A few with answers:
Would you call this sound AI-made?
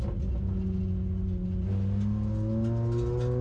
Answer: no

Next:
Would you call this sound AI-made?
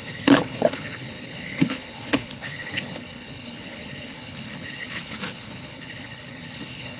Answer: yes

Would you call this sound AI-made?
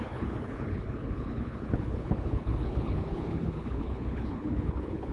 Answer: yes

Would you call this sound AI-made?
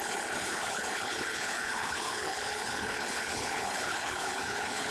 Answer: yes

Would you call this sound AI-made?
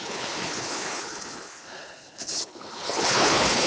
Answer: yes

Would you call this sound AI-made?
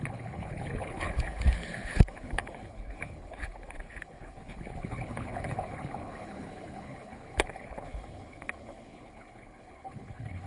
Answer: yes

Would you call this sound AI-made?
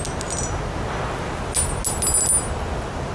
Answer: no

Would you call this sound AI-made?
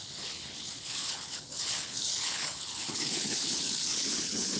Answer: yes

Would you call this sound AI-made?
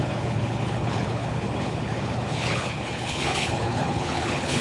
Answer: yes